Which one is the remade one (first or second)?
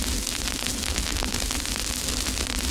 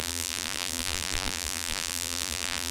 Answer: second